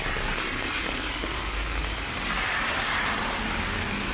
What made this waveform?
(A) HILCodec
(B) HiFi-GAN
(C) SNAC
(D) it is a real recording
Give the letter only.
D